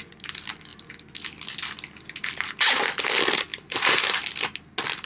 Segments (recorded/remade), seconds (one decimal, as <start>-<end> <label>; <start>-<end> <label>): 0.0-3.5 recorded; 3.5-4.2 remade; 4.2-5.1 recorded